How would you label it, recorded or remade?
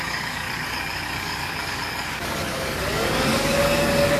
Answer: remade